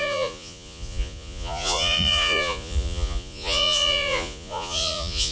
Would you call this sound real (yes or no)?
no